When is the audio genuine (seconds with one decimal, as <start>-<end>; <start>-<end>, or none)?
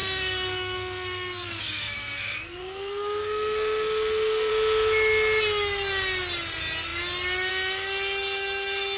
4.5-9.0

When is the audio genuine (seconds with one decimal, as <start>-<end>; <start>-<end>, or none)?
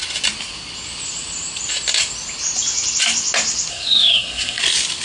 0.0-3.7; 4.6-5.0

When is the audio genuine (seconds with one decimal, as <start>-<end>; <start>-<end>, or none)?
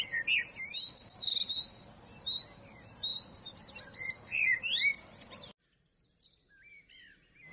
0.0-7.5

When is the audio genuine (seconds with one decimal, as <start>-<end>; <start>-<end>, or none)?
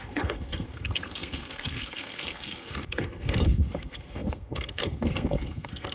none